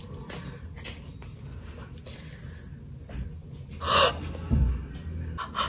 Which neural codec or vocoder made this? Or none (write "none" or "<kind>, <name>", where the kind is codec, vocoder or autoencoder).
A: none